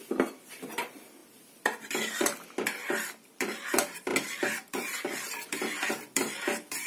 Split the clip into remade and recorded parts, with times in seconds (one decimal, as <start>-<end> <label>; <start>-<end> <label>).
0.0-6.9 remade